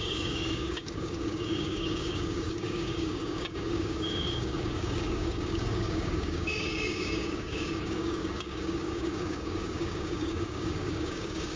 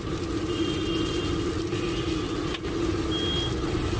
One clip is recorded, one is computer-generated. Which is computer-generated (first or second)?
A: first